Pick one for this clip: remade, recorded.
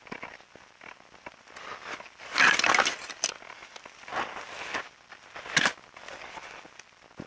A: recorded